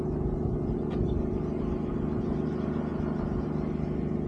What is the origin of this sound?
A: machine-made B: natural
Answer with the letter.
B